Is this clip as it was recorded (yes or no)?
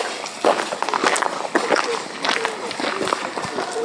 yes